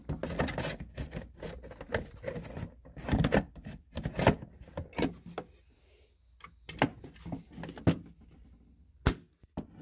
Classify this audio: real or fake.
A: real